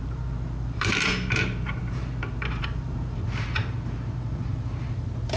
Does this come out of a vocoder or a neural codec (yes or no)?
yes